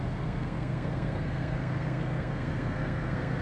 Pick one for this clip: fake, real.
fake